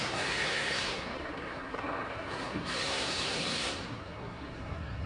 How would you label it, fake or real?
fake